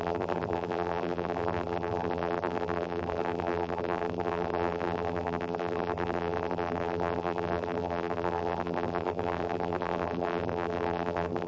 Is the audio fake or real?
fake